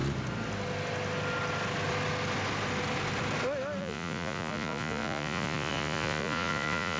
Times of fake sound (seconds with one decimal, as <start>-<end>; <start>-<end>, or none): 3.8-7.0